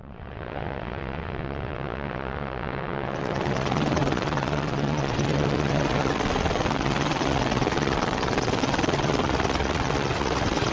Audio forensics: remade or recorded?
remade